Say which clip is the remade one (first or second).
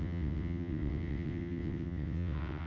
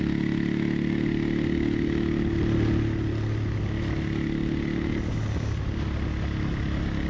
first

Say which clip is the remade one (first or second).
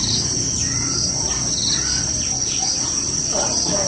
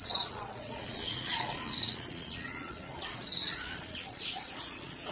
second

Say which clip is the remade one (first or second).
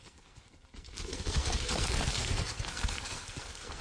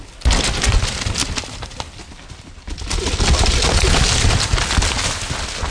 first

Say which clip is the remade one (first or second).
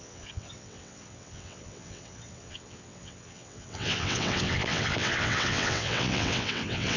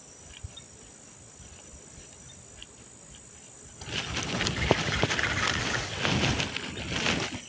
first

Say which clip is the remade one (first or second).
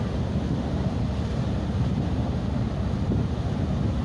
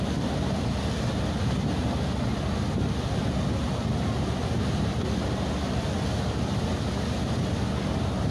first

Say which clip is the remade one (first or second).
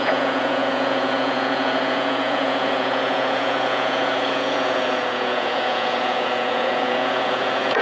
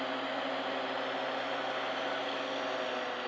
first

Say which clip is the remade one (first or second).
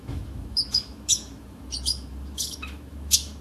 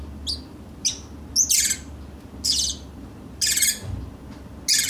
first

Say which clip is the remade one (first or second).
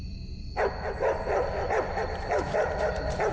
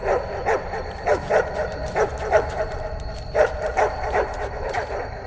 second